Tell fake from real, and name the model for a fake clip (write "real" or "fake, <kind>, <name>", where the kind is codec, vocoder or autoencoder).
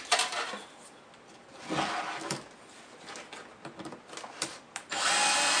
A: real